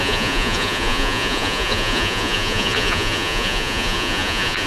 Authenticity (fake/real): fake